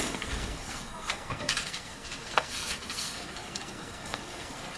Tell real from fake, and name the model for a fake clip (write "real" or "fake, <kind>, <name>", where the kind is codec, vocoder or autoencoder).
fake, codec, SNAC